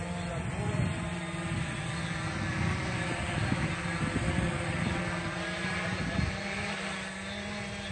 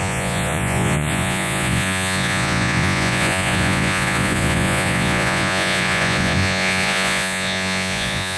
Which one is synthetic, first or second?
second